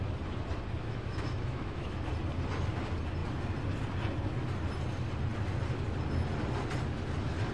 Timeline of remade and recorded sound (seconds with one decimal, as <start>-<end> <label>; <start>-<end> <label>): 0.0-0.8 recorded; 0.8-2.1 remade; 2.1-7.5 recorded